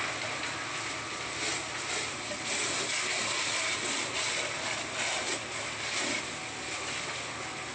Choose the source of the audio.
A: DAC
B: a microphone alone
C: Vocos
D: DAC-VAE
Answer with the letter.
B